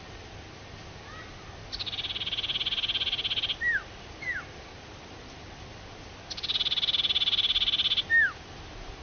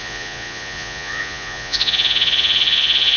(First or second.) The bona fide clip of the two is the first